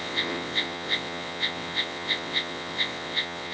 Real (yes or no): no